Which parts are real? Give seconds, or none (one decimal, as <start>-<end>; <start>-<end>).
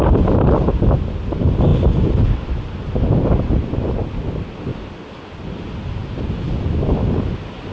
0.0-7.7